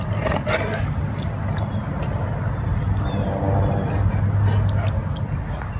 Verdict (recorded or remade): recorded